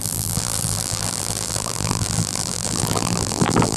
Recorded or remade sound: remade